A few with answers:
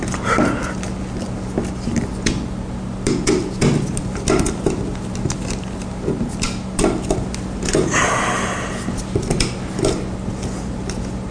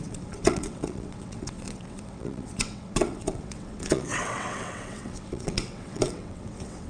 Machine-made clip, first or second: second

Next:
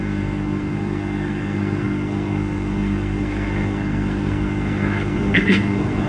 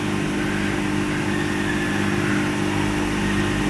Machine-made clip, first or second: first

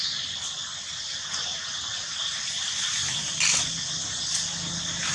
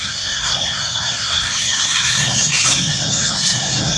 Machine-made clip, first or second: second